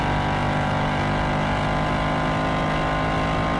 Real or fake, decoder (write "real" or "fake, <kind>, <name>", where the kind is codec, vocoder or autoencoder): real